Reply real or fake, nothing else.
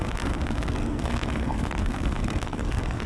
fake